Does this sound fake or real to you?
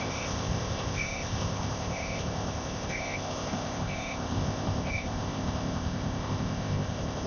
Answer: fake